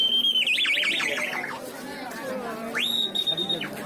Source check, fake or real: real